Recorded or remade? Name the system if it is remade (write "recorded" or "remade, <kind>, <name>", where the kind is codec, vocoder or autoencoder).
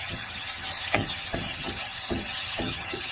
remade, vocoder, HiFi-GAN